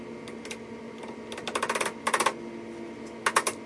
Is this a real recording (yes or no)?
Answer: yes